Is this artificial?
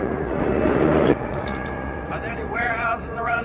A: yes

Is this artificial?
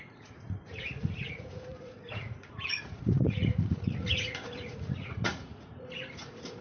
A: yes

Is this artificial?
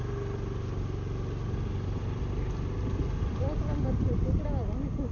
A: no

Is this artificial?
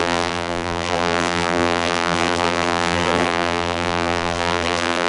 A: yes